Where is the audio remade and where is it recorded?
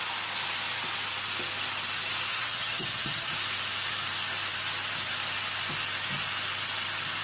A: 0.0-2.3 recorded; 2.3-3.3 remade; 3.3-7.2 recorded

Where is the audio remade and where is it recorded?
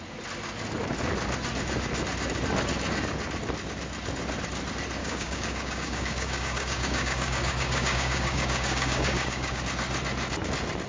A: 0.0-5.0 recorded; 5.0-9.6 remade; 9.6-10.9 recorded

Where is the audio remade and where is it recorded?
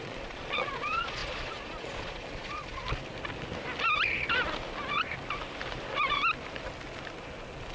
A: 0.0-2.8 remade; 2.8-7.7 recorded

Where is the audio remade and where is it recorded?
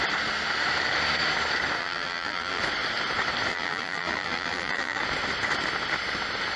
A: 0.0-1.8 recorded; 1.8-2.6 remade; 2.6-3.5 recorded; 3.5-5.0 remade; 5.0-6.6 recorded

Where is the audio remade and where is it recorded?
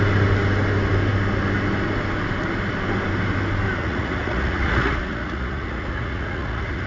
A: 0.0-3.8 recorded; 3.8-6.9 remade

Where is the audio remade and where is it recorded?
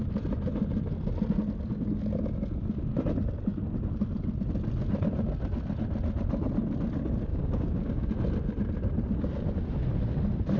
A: 0.0-7.3 recorded; 7.3-8.1 remade; 8.1-10.6 recorded